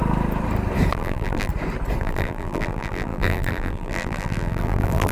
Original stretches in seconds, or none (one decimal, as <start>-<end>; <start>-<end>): 0.0-0.9; 1.5-2.0